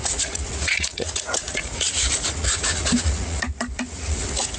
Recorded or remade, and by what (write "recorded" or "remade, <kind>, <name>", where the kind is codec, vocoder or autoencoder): remade, vocoder, Vocos